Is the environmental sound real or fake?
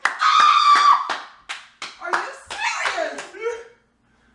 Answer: real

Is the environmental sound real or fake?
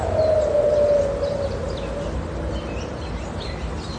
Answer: real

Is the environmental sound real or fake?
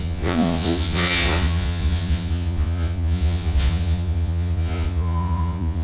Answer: fake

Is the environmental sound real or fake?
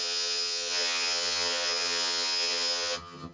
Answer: fake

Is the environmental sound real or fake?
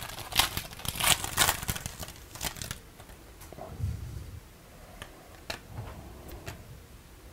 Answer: real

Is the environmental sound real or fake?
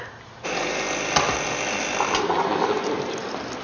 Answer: real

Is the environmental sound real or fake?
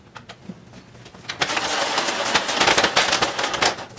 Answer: real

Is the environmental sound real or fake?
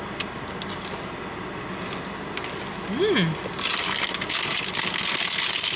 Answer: real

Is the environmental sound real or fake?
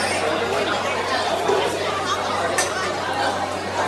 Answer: real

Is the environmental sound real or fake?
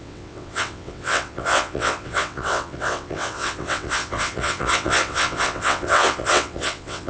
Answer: fake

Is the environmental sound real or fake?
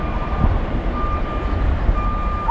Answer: real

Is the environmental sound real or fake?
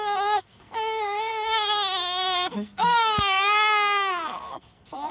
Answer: fake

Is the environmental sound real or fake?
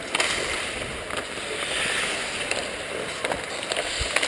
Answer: real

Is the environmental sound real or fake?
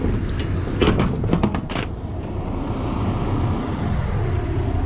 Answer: real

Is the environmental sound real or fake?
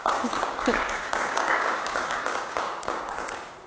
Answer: fake